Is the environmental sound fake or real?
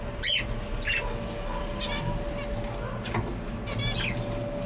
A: real